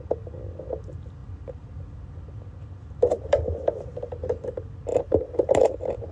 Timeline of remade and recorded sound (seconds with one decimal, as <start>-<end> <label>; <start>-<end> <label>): 0.0-3.1 recorded; 3.1-3.9 remade; 3.9-4.9 recorded; 4.9-5.6 remade; 5.6-6.1 recorded